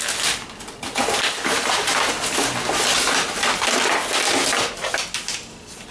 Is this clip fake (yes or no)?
no